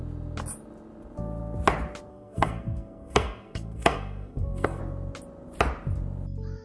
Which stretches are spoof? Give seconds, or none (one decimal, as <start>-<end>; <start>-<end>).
2.1-4.8